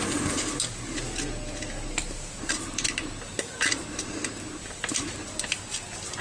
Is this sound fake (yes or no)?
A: no